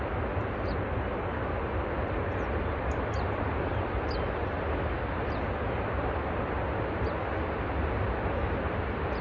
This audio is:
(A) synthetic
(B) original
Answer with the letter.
B